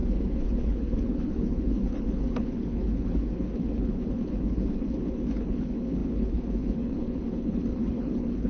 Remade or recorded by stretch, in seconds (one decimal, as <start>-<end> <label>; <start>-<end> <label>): 0.0-8.5 remade

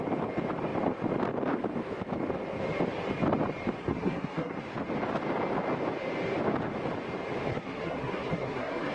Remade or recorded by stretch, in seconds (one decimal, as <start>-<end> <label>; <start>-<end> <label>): 0.0-3.8 recorded; 3.8-4.6 remade; 4.6-7.5 recorded; 7.5-8.9 remade

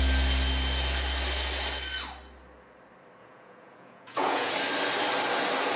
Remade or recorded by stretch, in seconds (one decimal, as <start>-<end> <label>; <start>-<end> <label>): 0.0-3.2 recorded; 3.2-4.5 remade; 4.5-5.8 recorded

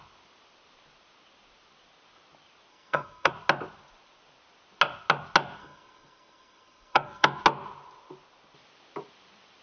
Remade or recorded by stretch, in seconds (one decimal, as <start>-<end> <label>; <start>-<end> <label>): 0.0-2.7 recorded; 2.7-3.3 remade; 3.3-5.6 recorded; 5.6-7.4 remade; 7.4-9.6 recorded

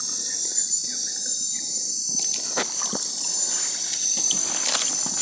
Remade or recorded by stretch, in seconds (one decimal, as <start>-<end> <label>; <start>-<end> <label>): 0.0-1.0 remade; 1.0-1.9 recorded; 1.9-5.2 remade

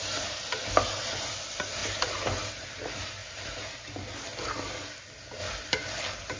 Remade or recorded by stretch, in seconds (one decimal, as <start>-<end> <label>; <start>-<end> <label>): 0.0-1.8 recorded; 1.8-2.8 remade; 2.8-3.2 recorded; 3.2-3.8 remade; 3.8-6.4 recorded